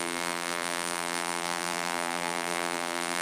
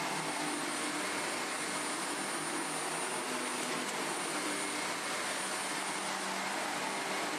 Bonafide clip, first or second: second